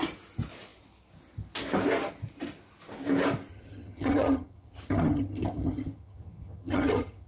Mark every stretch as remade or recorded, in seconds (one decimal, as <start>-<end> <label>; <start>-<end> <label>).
0.0-3.5 recorded; 3.5-7.3 remade